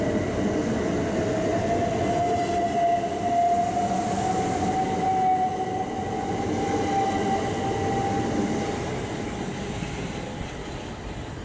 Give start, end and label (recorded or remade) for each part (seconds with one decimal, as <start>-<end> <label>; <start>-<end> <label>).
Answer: 0.0-11.4 recorded